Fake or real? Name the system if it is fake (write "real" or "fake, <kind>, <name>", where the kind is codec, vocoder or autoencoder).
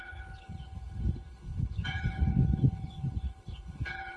fake, codec, HILCodec